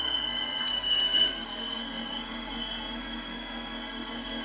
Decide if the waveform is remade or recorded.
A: remade